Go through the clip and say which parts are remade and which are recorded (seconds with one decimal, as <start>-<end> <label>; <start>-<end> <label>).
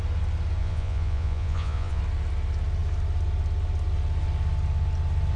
0.0-0.6 recorded; 0.6-2.0 remade; 2.0-5.4 recorded